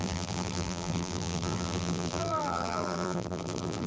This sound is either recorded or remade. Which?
remade